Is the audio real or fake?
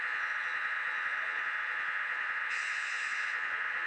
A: fake